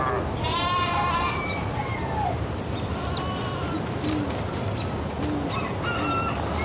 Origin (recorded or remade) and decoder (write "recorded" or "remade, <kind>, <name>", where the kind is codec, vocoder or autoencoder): recorded